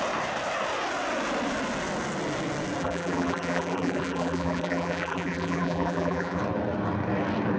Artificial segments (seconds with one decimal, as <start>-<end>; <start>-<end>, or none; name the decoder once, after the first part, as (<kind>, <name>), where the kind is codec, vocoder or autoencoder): 2.8-6.4 (vocoder, BigVGAN v2)